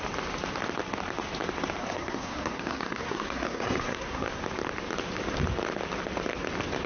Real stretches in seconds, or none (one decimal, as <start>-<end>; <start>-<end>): 0.0-1.8; 4.4-6.9